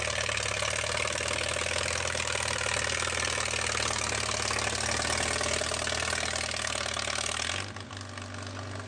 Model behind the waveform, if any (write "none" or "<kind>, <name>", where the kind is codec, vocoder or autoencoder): none